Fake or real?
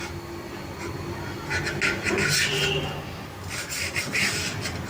real